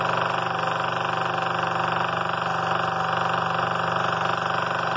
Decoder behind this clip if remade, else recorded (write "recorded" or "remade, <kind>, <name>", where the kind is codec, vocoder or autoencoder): recorded